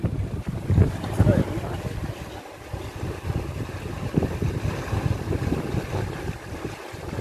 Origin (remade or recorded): recorded